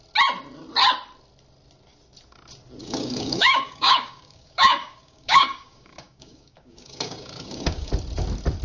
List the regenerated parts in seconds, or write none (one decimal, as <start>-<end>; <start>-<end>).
2.8-7.9